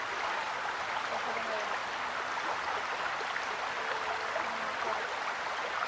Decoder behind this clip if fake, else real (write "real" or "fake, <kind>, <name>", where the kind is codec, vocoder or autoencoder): real